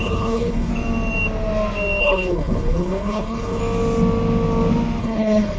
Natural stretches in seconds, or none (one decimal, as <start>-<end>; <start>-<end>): 0.7-2.0; 3.6-5.0